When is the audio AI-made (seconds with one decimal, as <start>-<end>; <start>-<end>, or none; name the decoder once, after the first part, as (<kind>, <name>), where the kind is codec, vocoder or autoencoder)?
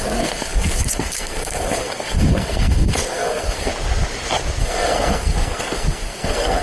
0.0-3.7 (codec, SNAC); 4.6-6.6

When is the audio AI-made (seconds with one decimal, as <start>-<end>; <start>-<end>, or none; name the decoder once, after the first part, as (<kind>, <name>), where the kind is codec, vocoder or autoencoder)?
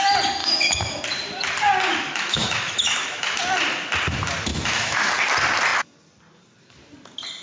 0.4-1.0 (autoencoder, DAC-VAE); 1.9-3.4; 4.5-5.1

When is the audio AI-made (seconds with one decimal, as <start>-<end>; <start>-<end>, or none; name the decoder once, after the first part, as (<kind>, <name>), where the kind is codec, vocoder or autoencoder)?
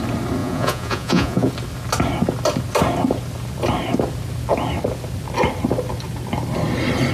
0.4-1.5 (vocoder, Vocos)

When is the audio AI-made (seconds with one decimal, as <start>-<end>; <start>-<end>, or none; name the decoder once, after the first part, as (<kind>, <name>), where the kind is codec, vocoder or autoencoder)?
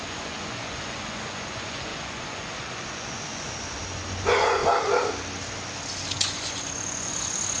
0.0-4.6 (vocoder, Vocos); 6.1-7.6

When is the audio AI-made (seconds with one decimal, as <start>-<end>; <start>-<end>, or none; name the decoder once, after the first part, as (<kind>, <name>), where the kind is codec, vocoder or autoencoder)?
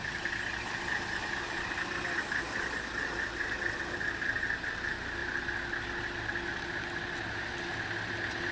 none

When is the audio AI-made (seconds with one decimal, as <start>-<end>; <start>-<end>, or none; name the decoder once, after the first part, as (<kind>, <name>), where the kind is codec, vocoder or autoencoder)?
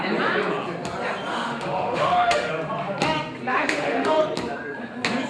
1.3-2.5 (autoencoder, DAC-VAE); 3.5-4.2